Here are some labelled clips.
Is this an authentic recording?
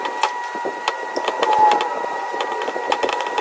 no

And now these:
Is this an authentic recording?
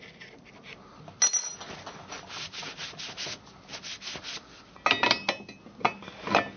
yes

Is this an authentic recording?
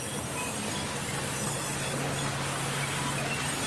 yes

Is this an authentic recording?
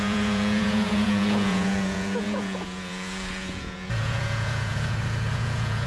no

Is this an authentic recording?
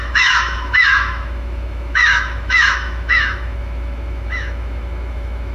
no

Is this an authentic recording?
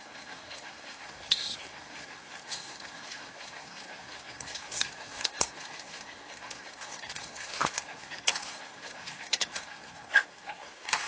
no